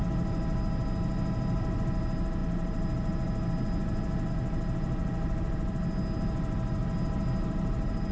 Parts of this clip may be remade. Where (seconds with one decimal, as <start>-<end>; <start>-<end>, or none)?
none